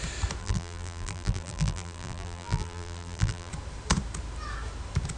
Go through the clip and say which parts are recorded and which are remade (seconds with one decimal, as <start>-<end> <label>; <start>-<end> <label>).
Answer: 0.0-0.4 recorded; 0.4-3.5 remade; 3.5-5.2 recorded